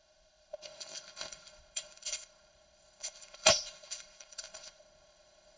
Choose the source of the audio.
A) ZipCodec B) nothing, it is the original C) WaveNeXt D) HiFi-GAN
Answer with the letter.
A